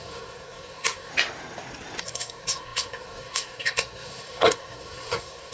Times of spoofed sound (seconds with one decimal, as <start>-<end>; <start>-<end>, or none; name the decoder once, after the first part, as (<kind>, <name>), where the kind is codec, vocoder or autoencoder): 0.0-1.1 (codec, SNAC); 2.0-5.5